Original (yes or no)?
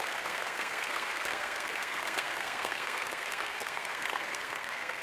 no